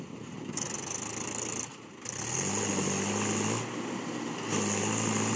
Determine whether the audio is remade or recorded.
recorded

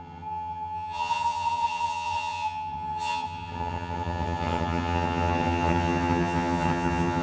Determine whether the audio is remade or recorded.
remade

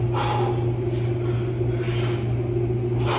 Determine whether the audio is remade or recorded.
recorded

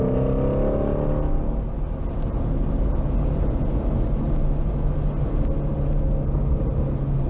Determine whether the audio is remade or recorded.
recorded